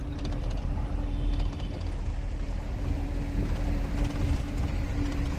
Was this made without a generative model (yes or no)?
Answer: yes